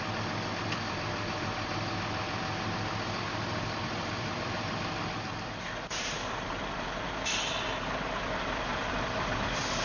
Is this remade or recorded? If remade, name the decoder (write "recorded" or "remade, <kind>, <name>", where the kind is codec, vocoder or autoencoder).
remade, vocoder, BigVGAN v2